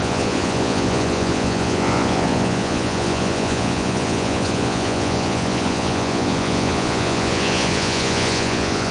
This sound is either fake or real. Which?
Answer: fake